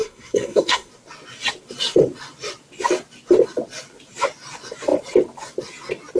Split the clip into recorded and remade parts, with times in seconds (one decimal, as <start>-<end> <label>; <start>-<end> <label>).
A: 0.0-0.9 remade; 0.9-6.2 recorded